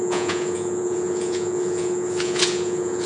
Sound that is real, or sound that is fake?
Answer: fake